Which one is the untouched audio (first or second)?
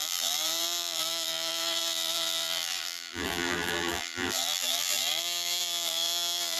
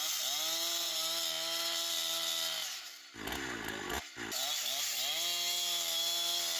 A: second